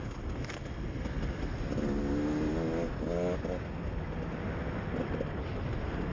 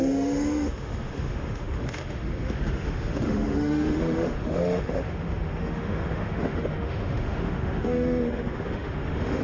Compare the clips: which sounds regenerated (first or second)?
second